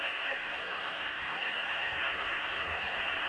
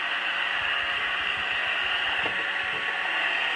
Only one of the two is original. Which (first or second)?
second